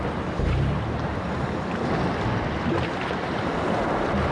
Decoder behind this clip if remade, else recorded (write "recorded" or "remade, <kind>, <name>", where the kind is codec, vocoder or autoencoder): recorded